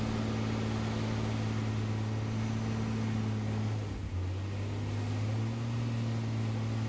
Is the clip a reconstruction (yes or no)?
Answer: no